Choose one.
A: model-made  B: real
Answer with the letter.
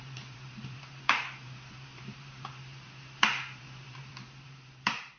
A